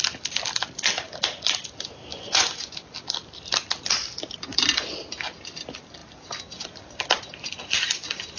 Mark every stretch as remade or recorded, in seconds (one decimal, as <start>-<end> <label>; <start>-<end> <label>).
0.0-2.1 recorded; 2.1-2.7 remade; 2.7-8.4 recorded